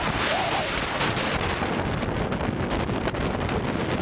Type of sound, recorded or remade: recorded